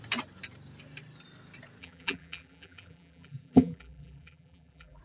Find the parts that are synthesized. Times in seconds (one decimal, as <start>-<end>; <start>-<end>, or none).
1.8-5.0